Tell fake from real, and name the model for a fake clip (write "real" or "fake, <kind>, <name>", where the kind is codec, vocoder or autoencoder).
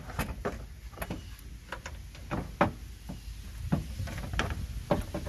real